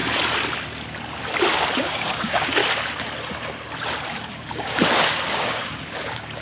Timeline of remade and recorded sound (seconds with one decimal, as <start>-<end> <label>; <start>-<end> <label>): 0.0-1.5 recorded; 1.5-2.6 remade; 2.6-4.2 recorded; 4.2-6.4 remade